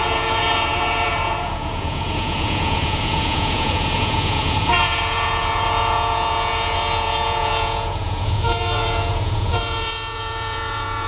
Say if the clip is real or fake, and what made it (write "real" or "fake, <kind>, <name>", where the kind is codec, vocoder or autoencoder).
fake, vocoder, Vocos